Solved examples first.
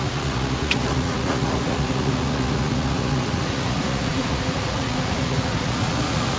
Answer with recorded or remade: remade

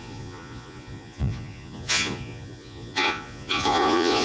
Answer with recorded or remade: remade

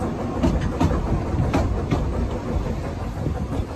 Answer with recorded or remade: recorded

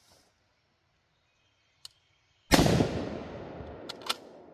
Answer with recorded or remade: recorded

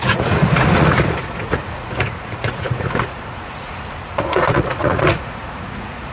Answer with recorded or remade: remade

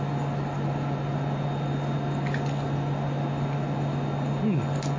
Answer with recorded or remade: recorded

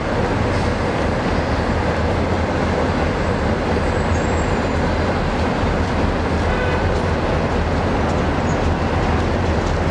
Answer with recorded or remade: recorded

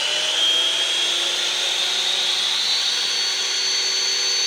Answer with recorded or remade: recorded